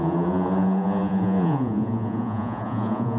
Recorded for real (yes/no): no